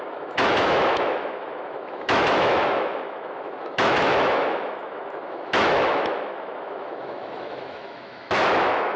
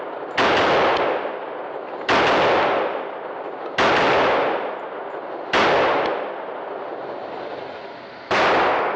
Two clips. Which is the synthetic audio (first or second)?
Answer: first